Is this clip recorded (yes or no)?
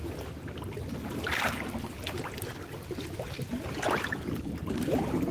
yes